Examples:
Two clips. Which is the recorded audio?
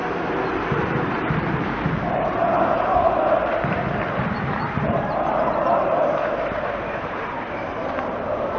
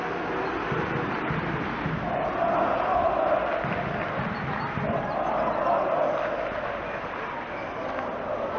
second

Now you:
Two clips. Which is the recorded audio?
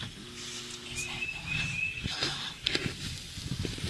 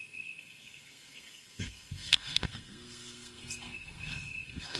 first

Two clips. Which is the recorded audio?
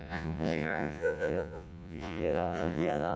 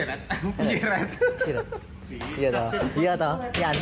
second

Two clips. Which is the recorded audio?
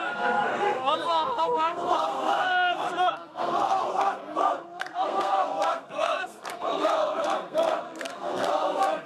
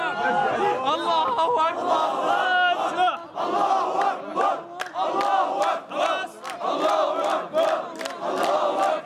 second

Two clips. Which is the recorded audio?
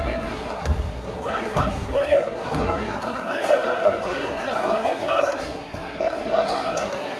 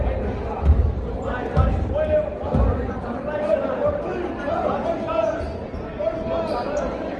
second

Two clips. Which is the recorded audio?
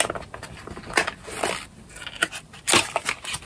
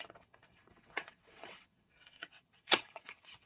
first